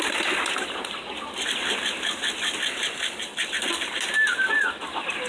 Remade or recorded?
recorded